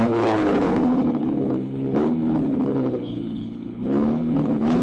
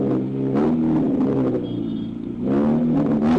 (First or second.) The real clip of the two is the second